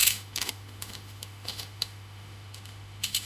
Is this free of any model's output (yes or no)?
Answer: no